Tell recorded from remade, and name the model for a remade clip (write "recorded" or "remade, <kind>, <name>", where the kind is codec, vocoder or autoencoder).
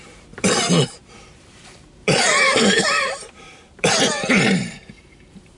remade, vocoder, BigVGAN v2